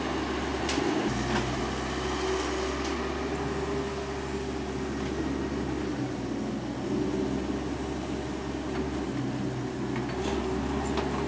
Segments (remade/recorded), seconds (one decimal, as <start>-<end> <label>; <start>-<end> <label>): 0.0-0.5 recorded; 0.5-1.6 remade; 1.6-11.3 recorded

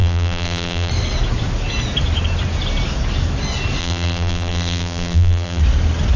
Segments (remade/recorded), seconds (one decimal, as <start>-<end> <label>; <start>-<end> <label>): 0.0-0.9 remade; 0.9-3.8 recorded; 3.8-5.6 remade; 5.6-6.2 recorded

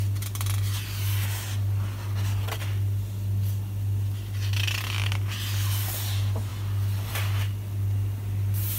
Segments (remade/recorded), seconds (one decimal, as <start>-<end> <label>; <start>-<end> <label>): 0.0-8.8 recorded